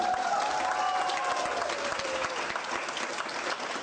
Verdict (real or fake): real